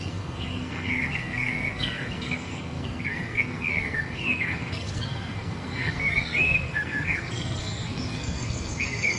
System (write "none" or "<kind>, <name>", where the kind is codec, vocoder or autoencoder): codec, SNAC